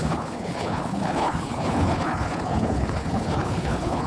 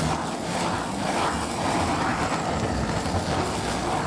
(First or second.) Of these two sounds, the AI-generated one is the first